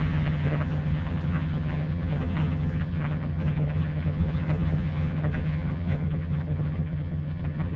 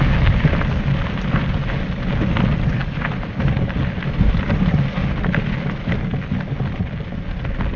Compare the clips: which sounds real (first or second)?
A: second